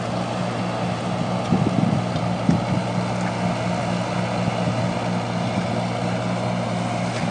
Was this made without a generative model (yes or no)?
yes